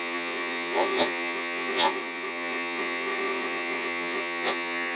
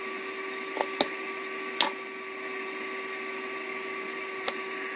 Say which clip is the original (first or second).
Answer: second